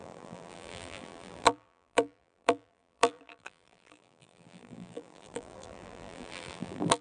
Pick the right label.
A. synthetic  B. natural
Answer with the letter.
A